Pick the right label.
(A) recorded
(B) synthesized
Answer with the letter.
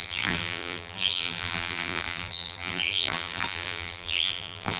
B